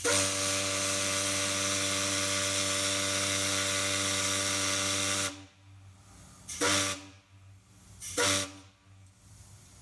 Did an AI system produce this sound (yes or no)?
no